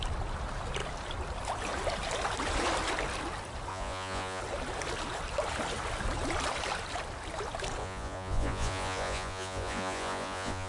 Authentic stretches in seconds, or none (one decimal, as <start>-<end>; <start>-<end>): 0.0-3.7; 4.4-7.8